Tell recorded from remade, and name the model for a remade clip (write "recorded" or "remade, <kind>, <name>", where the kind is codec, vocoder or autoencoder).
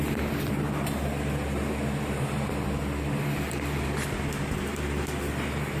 recorded